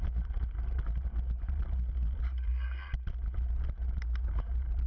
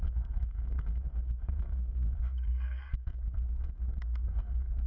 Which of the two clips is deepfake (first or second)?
second